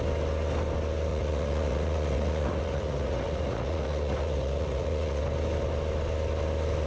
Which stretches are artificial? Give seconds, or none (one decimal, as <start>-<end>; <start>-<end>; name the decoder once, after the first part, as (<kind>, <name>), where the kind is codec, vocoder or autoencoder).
1.1-5.2 (vocoder, Vocos)

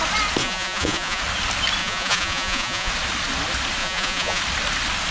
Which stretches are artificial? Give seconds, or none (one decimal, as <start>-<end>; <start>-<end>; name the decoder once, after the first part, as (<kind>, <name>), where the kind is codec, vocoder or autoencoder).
0.4-1.2 (vocoder, Vocos); 1.8-2.9; 3.8-4.4

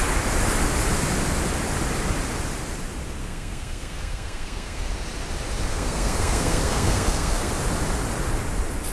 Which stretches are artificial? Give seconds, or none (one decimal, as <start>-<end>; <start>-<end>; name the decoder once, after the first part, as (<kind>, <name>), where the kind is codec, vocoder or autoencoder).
3.2-4.9 (codec, SNAC); 5.7-7.5

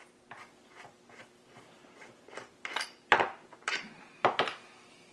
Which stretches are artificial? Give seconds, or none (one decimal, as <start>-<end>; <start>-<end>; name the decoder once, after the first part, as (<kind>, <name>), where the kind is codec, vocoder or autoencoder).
0.6-3.7 (vocoder, BigVGAN v2)

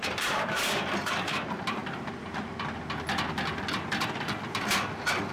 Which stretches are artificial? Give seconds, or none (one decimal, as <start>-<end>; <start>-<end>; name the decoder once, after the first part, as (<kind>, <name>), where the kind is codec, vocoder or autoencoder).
0.0-1.8 (vocoder, BigVGAN v2)

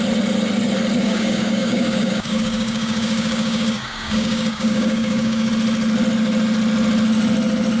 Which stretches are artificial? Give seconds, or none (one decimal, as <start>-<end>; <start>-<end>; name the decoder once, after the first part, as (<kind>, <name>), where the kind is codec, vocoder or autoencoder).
1.0-5.5 (codec, DAC)